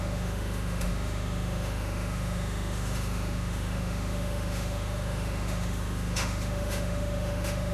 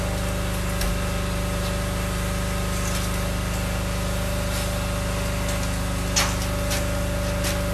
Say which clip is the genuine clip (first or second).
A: second